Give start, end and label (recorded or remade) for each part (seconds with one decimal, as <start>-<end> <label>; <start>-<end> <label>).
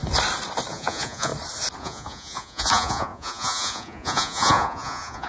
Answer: 0.0-0.7 recorded; 0.7-1.3 remade; 1.3-1.8 recorded; 1.8-5.3 remade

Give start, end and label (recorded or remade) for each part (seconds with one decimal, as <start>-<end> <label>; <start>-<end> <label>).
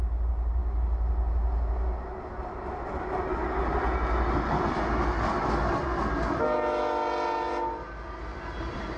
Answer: 0.0-9.0 recorded